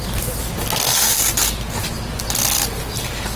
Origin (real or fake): real